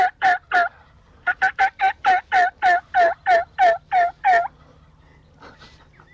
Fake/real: real